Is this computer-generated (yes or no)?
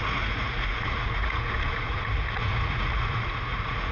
yes